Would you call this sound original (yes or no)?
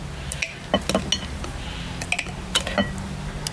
yes